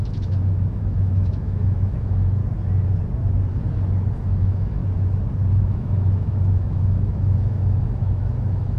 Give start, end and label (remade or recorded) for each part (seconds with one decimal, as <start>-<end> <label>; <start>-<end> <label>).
0.0-2.4 remade; 2.4-4.1 recorded; 4.1-4.8 remade; 4.8-5.6 recorded; 5.6-8.8 remade